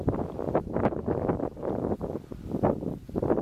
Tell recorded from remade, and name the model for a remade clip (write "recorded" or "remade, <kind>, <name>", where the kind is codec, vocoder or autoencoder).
recorded